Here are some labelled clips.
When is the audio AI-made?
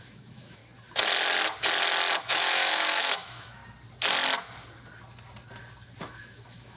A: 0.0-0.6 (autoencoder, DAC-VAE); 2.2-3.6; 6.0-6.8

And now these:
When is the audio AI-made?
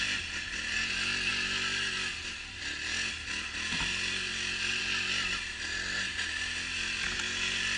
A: none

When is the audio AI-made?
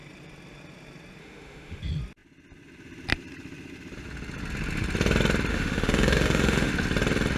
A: 1.2-1.8 (autoencoder, DAC-VAE); 5.5-6.7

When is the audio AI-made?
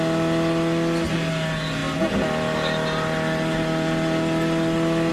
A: none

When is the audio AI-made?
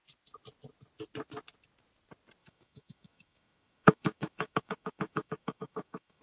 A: 2.4-6.2 (autoencoder, DAC-VAE)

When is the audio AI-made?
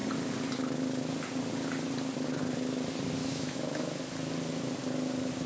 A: 3.2-4.0 (autoencoder, DAC-VAE)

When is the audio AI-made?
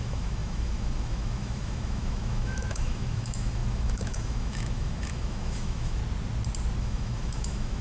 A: 0.0-6.0 (autoencoder, DAC-VAE); 6.8-7.8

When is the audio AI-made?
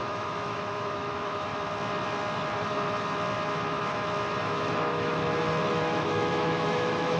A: 0.0-1.5 (autoencoder, DAC-VAE); 4.4-5.1; 5.7-7.2